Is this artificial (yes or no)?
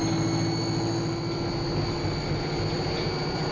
no